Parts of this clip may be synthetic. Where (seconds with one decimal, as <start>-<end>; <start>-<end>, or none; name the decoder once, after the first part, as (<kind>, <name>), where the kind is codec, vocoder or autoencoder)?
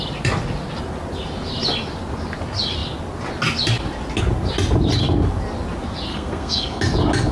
6.1-6.8 (codec, SNAC)